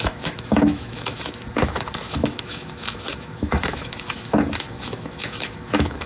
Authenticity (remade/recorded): remade